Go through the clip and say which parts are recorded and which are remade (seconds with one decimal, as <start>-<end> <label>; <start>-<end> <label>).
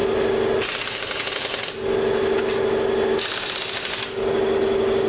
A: 0.0-5.1 recorded